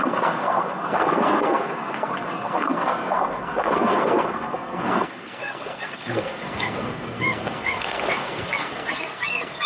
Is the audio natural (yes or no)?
no